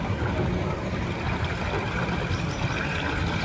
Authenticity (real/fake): real